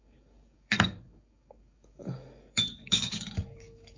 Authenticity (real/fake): fake